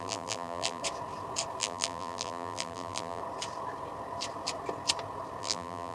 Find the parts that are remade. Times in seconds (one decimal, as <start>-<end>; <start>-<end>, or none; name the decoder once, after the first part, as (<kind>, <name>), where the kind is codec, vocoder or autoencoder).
0.0-0.8 (vocoder, BigVGAN v2); 1.6-3.2; 5.4-5.9